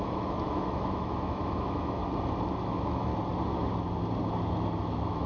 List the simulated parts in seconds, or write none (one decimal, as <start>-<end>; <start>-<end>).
0.0-2.0; 2.6-3.1; 4.8-5.3